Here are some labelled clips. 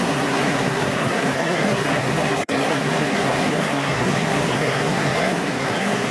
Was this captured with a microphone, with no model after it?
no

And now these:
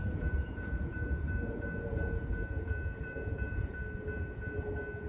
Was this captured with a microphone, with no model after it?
no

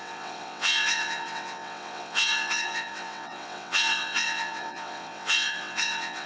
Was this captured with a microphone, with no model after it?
no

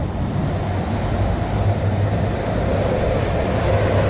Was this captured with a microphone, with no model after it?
yes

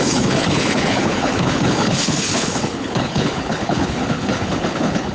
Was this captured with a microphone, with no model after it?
no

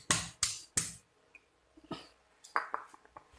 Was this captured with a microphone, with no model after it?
yes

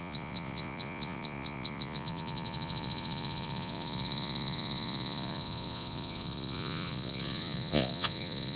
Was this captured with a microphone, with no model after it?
no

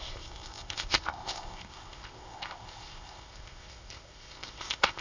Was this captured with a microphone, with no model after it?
no